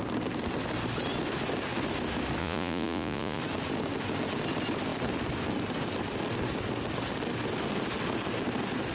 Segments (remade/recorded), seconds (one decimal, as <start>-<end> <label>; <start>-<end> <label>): 0.0-2.4 recorded; 2.4-3.4 remade; 3.4-8.9 recorded